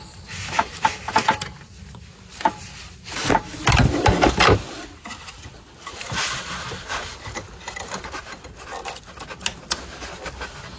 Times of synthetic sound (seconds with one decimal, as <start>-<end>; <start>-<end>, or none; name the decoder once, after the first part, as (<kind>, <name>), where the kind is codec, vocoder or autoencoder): none